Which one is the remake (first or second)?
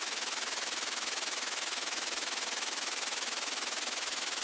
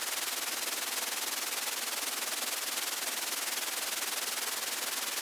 first